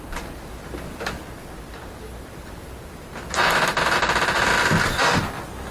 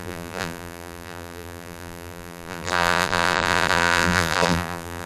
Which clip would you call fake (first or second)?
second